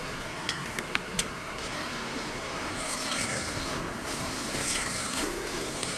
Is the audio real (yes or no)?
no